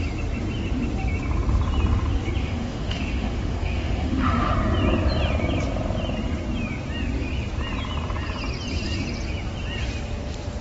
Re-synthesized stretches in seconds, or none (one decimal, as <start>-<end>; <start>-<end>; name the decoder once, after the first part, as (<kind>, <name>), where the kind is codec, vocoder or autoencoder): 2.4-4.5 (autoencoder, DAC-VAE)